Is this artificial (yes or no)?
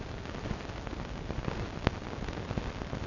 no